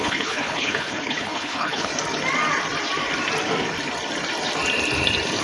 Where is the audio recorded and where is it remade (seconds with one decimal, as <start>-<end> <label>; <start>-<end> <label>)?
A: 0.0-1.9 remade; 1.9-5.4 recorded